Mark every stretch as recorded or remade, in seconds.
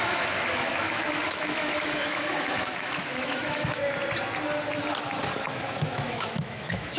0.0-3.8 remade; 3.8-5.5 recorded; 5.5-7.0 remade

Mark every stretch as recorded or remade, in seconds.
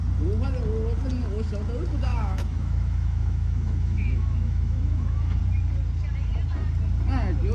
0.0-2.1 recorded; 2.1-5.4 remade; 5.4-7.5 recorded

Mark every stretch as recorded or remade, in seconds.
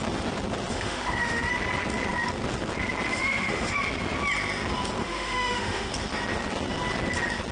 0.0-0.7 recorded; 0.7-1.5 remade; 1.5-3.1 recorded; 3.1-3.7 remade; 3.7-5.0 recorded; 5.0-5.9 remade; 5.9-7.5 recorded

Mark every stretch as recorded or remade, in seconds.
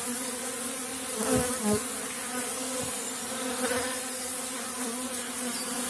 0.0-5.9 recorded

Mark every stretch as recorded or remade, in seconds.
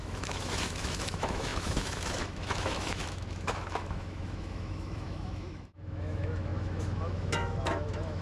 0.0-8.2 remade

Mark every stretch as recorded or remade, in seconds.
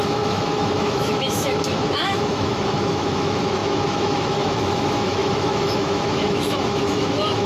0.0-7.5 remade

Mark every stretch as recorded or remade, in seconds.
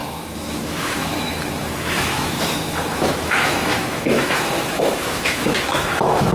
0.0-6.3 remade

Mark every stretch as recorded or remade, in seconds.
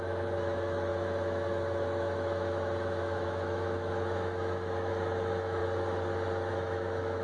0.0-5.6 remade; 5.6-6.5 recorded; 6.5-7.2 remade